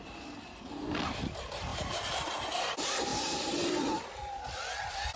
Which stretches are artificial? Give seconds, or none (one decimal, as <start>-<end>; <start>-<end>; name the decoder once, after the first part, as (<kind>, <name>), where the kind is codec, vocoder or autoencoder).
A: 1.7-2.4 (vocoder, BigVGAN v2); 3.1-4.4